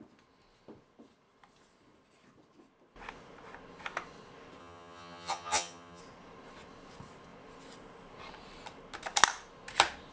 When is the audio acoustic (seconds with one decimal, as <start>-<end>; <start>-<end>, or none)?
0.0-4.6; 6.0-10.1